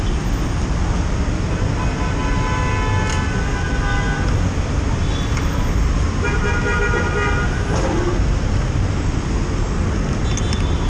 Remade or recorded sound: recorded